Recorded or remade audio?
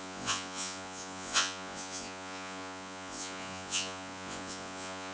remade